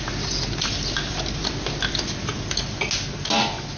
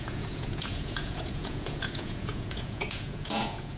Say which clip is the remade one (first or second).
second